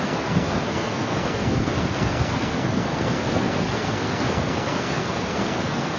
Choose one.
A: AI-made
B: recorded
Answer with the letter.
A